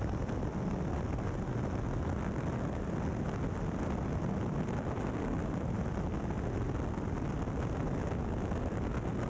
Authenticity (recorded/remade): recorded